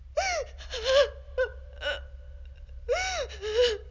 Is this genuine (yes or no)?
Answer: yes